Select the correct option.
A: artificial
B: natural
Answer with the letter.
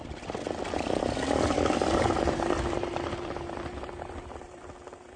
B